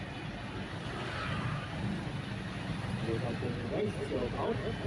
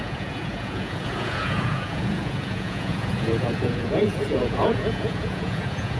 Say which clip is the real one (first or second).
first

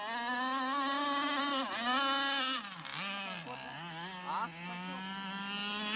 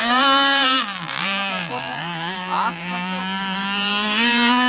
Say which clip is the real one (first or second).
first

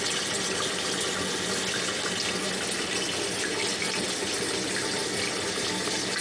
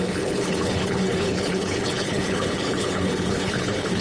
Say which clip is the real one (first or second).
first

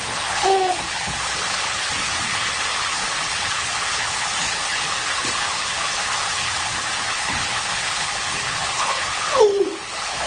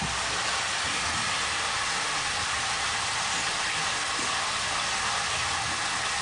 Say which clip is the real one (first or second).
second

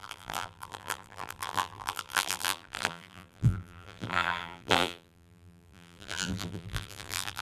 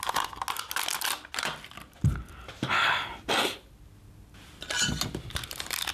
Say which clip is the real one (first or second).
second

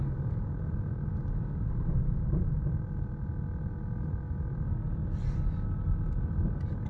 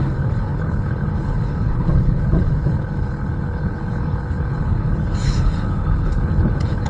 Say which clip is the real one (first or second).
first